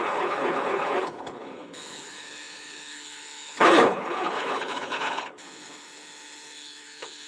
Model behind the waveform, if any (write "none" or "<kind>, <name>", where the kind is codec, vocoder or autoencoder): codec, HILCodec